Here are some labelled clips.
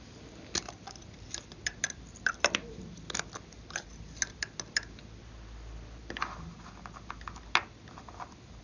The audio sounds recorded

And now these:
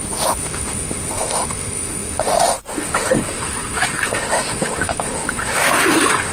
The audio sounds remade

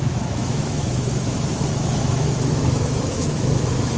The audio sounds remade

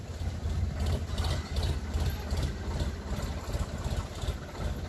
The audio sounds recorded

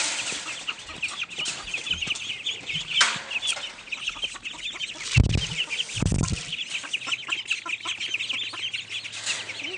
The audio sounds recorded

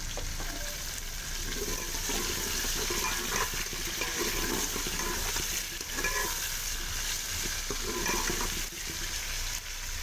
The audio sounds recorded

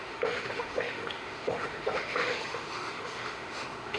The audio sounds remade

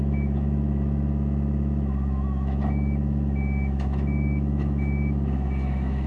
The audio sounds remade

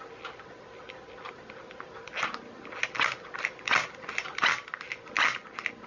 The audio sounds recorded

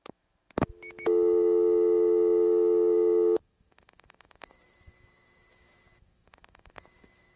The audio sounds remade